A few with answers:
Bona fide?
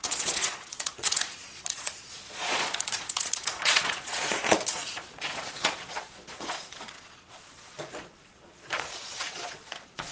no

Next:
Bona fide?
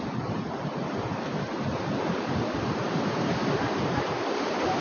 no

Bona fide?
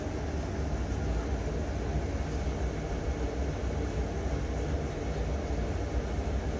yes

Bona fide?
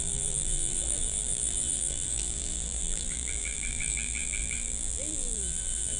no